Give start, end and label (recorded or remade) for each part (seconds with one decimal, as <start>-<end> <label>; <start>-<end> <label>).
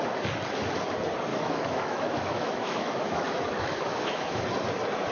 0.0-1.3 recorded; 1.3-4.4 remade; 4.4-5.1 recorded